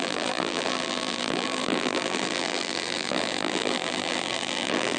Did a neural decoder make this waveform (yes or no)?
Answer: yes